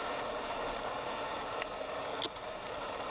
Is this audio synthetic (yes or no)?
no